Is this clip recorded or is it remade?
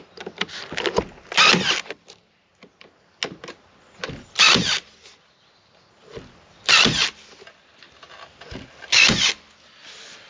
recorded